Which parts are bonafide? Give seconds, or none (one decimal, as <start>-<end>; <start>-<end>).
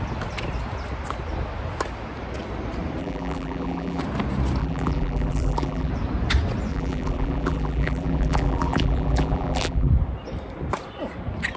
0.0-3.0; 4.0-4.6; 5.9-6.7; 9.9-11.6